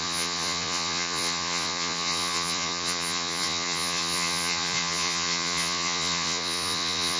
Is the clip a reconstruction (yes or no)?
yes